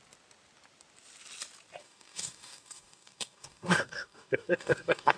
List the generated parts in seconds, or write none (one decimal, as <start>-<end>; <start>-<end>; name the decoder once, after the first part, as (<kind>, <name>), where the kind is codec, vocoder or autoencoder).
1.8-5.2 (codec, DAC)

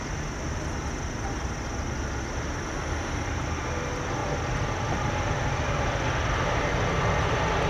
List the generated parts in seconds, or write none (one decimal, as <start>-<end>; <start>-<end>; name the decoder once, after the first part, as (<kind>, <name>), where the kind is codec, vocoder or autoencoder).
none